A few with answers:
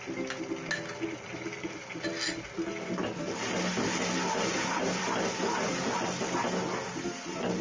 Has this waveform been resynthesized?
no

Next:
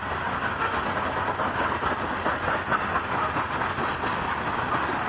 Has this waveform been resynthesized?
no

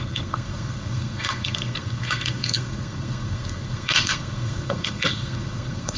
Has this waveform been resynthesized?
yes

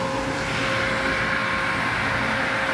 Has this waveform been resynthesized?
no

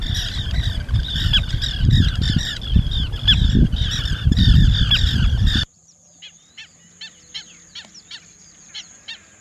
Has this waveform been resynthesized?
no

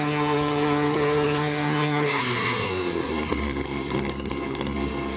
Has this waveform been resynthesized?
yes